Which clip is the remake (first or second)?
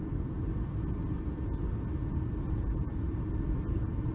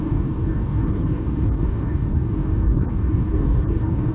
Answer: second